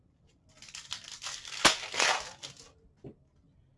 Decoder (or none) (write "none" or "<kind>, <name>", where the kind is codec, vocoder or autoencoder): none